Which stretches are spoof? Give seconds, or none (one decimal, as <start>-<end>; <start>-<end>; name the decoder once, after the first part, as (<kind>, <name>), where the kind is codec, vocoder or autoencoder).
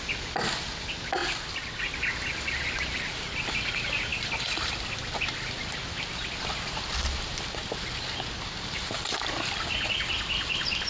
none